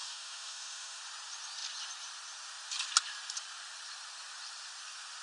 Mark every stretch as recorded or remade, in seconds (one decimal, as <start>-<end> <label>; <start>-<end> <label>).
0.0-1.0 remade; 1.0-5.2 recorded